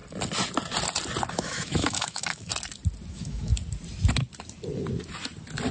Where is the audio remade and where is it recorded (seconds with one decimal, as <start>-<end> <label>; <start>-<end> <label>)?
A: 0.0-1.3 recorded; 1.3-2.5 remade; 2.5-3.1 recorded; 3.1-3.5 remade; 3.5-5.7 recorded